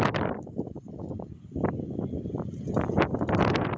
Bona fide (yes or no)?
yes